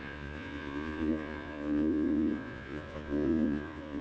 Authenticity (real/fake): fake